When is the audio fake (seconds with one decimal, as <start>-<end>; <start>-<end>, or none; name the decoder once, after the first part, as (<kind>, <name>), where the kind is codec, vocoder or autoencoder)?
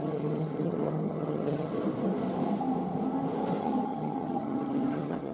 0.0-1.7 (vocoder, HiFi-GAN); 3.6-5.3